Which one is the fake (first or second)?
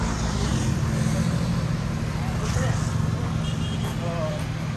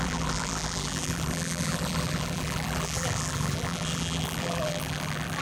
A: second